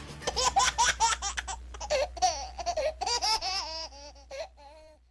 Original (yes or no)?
no